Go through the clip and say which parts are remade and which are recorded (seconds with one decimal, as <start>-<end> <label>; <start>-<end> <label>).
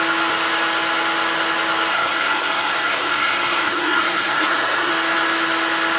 0.0-1.9 recorded; 1.9-4.9 remade; 4.9-6.0 recorded